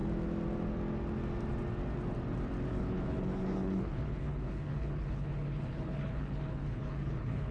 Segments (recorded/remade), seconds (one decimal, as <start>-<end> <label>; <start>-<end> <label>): 0.0-2.7 recorded; 2.7-7.5 remade